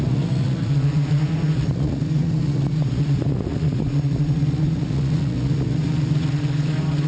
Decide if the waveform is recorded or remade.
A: remade